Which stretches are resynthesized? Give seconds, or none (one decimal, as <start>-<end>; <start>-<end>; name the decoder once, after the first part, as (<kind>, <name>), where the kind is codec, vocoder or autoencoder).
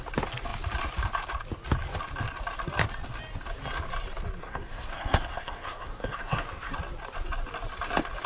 4.4-6.7 (codec, SNAC)